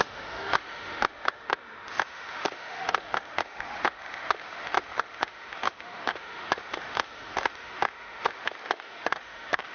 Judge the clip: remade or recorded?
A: remade